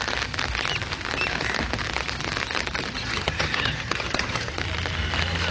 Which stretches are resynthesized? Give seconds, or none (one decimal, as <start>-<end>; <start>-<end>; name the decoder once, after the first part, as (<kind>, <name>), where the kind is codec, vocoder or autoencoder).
3.0-4.5 (vocoder, HiFi-GAN)